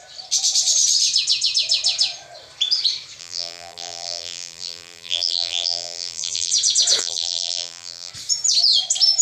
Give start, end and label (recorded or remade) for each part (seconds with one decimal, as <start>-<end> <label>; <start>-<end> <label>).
0.0-3.2 recorded; 3.2-6.5 remade; 6.5-7.0 recorded; 7.0-8.1 remade; 8.1-9.2 recorded